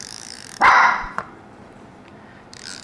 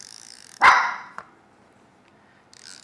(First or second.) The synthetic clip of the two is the first